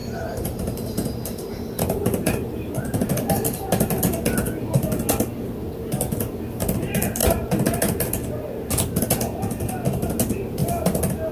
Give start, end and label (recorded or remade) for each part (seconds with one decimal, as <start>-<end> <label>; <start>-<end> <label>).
0.0-2.7 remade; 2.7-11.3 recorded